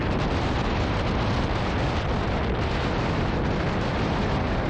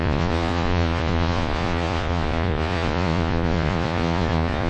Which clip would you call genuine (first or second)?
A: first